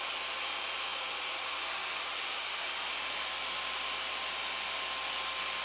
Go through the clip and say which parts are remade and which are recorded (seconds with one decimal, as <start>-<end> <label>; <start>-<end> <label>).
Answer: 0.0-0.9 recorded; 0.9-1.6 remade; 1.6-5.6 recorded